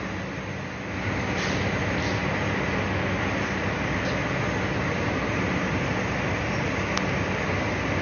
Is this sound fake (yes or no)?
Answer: no